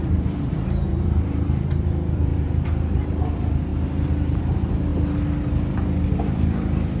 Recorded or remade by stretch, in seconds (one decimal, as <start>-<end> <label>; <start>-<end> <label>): 0.0-3.7 remade; 3.7-4.4 recorded; 4.4-4.9 remade; 4.9-6.2 recorded; 6.2-7.0 remade